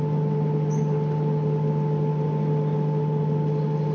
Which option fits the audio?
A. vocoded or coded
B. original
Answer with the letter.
B